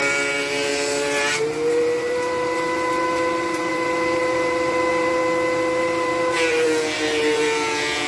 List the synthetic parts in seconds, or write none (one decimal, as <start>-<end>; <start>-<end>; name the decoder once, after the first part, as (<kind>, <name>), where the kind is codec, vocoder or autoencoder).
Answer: 0.0-5.2 (vocoder, BigVGAN v2); 5.8-8.1